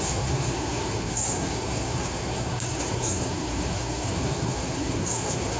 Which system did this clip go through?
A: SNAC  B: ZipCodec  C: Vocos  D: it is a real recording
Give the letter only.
A